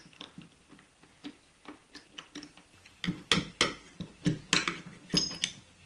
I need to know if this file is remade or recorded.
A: recorded